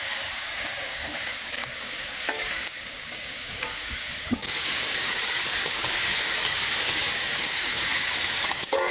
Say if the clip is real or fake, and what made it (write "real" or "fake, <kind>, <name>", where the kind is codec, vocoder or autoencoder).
fake, codec, DAC